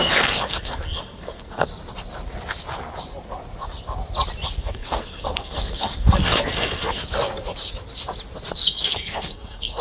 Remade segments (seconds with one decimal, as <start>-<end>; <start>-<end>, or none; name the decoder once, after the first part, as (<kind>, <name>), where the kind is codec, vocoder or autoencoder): 0.0-1.7 (codec, SNAC); 4.7-7.0; 8.5-9.8